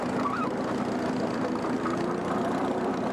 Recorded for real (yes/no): no